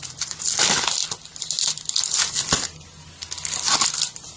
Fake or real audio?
real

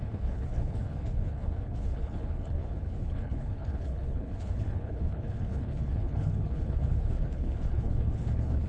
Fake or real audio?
fake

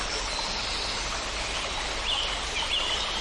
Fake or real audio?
real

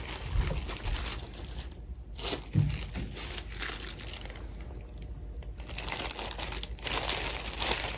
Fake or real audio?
real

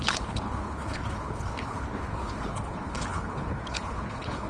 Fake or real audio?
fake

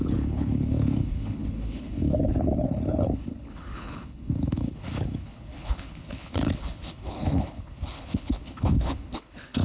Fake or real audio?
fake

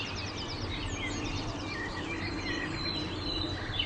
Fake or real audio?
real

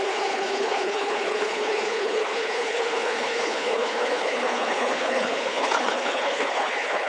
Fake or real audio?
fake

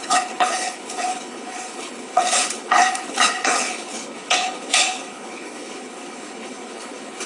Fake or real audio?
fake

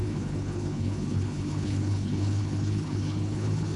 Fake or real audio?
fake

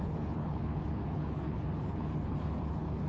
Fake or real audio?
fake